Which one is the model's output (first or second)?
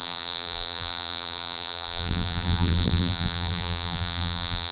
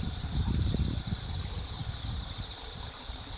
first